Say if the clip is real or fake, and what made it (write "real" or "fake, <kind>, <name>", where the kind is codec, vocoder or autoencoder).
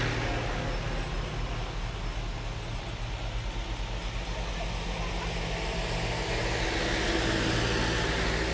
real